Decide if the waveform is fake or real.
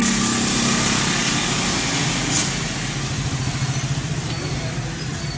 real